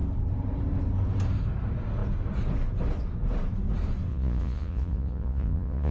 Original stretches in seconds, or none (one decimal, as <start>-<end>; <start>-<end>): 0.0-4.1